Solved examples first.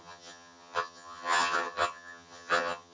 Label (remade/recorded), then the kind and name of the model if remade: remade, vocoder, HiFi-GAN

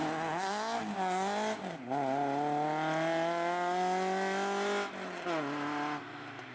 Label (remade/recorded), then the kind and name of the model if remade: recorded